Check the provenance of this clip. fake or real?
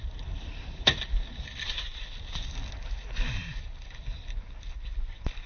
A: real